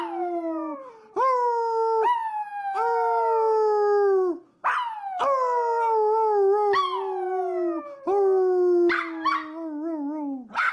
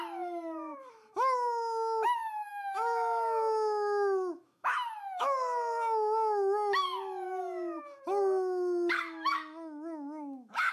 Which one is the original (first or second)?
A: first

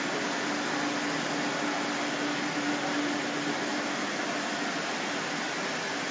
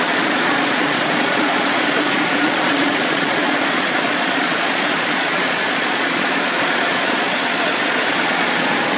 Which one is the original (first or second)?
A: first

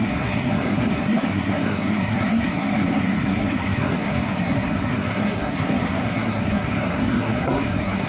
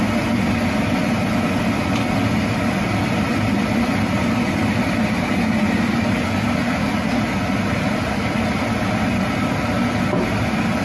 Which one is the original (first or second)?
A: second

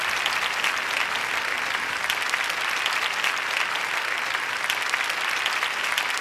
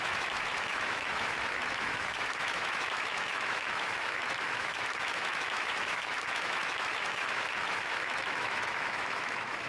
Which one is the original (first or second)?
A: first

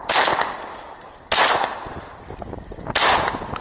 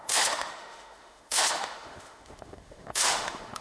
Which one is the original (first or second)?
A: first